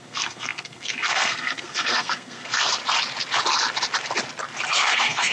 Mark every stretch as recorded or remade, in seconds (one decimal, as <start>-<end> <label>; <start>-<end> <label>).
0.0-2.8 remade; 2.8-4.7 recorded; 4.7-5.3 remade